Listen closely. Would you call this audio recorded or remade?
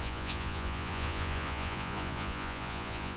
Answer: remade